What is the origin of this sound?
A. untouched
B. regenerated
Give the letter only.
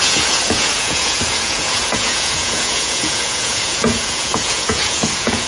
B